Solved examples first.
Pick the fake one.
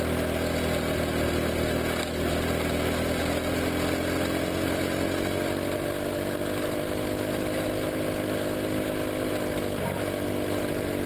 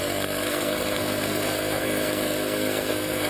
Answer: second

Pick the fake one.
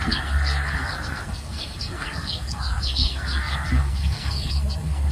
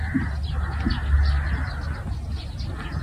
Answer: first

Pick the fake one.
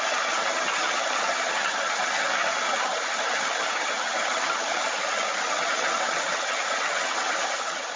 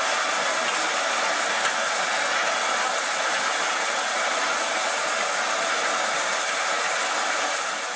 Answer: first